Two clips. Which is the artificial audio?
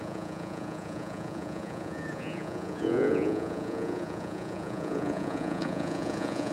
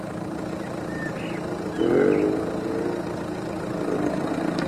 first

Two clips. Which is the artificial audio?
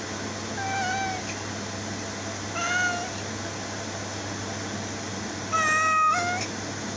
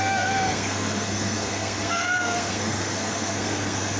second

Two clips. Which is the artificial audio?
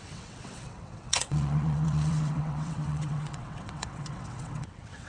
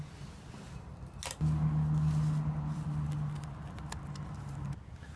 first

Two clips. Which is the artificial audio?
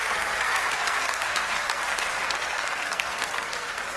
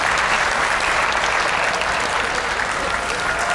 first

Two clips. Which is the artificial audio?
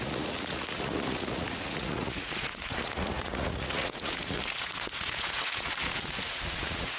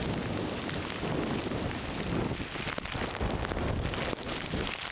first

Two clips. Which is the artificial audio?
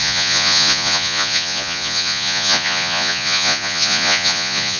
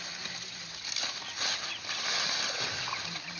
first